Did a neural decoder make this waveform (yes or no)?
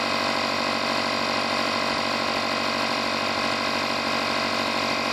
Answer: no